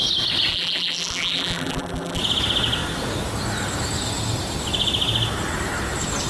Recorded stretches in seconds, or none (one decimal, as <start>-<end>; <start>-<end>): 0.0-0.5; 2.2-6.3